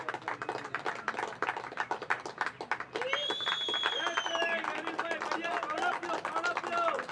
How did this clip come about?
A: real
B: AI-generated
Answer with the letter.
A